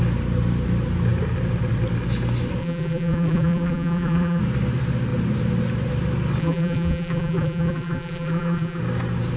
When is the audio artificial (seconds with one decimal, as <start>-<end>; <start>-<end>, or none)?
2.6-4.4; 6.4-8.8